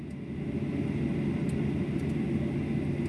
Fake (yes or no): no